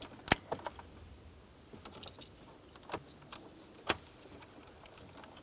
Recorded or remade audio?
recorded